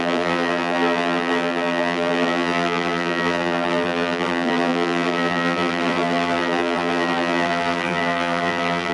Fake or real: fake